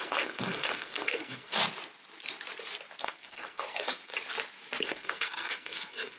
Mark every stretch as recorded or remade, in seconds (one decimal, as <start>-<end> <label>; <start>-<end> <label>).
0.0-1.6 remade; 1.6-3.0 recorded; 3.0-4.1 remade; 4.1-4.8 recorded; 4.8-6.2 remade